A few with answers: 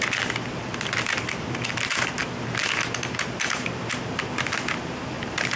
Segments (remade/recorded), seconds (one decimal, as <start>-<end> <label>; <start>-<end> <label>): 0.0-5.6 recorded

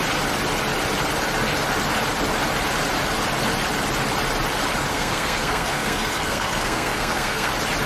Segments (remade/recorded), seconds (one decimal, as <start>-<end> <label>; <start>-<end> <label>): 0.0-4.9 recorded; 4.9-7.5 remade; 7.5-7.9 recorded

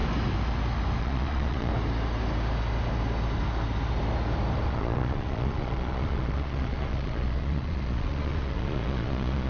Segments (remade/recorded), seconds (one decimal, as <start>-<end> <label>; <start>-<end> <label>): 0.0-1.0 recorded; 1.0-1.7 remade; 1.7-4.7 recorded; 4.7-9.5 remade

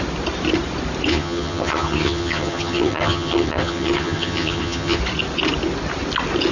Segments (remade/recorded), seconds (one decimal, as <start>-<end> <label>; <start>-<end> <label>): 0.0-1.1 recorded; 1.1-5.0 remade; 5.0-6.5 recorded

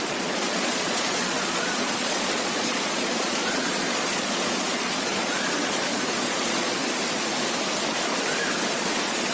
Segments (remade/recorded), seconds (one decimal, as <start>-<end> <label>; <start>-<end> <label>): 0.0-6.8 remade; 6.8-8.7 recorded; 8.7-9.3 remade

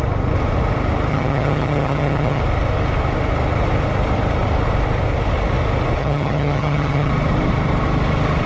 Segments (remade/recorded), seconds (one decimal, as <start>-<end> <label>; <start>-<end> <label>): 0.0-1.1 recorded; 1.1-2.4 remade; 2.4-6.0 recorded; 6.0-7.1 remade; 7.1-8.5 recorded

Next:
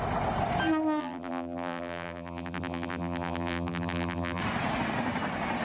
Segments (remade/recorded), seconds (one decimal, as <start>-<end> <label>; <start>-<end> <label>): 0.0-1.0 recorded; 1.0-4.4 remade; 4.4-5.6 recorded